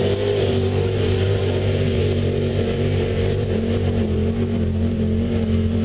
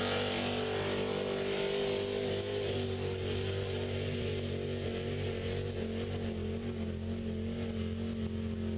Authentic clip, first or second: second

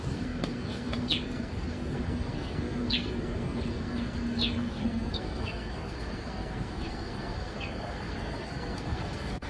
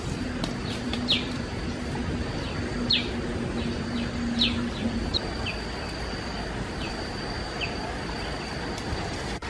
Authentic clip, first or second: second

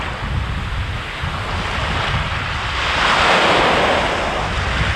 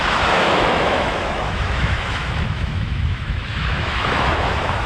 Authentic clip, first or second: first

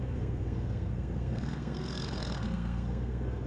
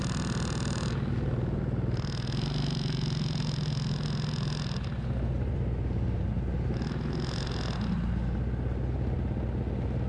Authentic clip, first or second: second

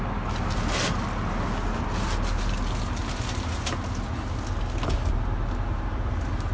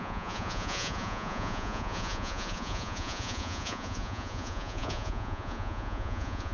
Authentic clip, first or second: first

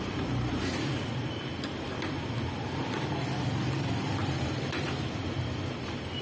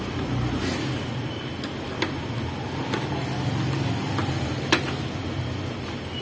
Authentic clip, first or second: second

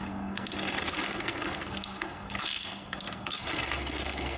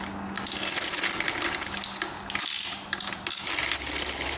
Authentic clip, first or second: second